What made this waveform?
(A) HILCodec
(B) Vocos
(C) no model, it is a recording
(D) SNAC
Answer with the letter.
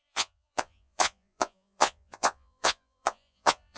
B